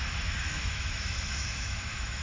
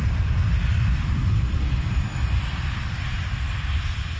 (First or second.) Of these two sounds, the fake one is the first